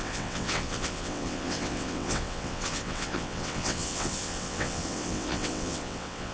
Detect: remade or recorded remade